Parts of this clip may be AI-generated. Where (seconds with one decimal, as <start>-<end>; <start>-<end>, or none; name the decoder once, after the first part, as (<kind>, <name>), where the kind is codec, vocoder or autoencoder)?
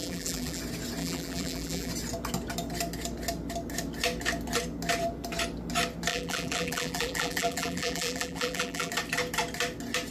0.0-0.6 (vocoder, BigVGAN v2); 1.0-1.9; 6.1-8.9